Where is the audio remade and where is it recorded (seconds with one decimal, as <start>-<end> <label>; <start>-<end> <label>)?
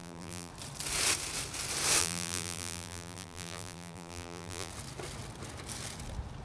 0.0-0.5 remade; 0.5-2.0 recorded; 2.0-4.7 remade; 4.7-6.4 recorded